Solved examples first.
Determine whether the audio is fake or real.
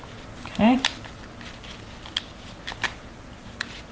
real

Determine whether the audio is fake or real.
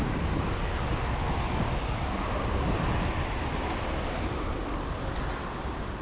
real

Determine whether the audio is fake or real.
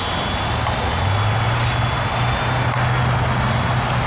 real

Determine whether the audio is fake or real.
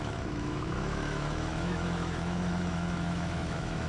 fake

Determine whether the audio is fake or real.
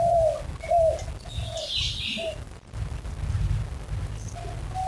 real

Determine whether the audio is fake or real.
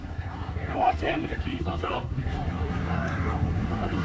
fake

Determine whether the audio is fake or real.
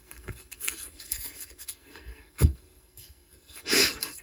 fake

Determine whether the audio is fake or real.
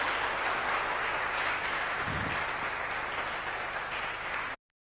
real